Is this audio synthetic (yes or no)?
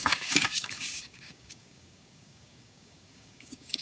yes